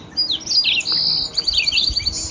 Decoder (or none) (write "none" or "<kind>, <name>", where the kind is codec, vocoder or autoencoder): none